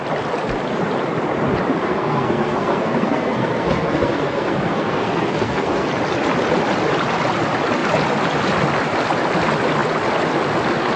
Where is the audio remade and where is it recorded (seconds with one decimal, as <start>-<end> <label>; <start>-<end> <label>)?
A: 0.0-1.8 recorded; 1.8-5.9 remade; 5.9-11.0 recorded